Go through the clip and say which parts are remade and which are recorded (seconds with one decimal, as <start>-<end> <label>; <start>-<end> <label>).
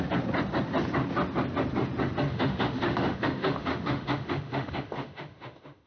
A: 0.0-2.3 recorded; 2.3-5.9 remade